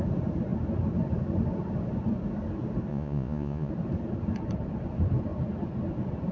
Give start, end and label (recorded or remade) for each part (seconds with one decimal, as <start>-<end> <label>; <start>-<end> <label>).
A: 0.0-2.9 recorded; 2.9-3.7 remade; 3.7-6.3 recorded